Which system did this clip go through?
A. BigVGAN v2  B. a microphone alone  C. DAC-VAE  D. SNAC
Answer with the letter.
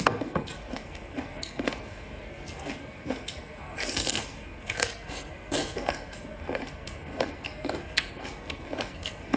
D